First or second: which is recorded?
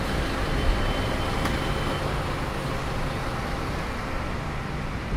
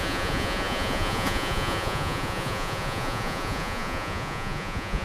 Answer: first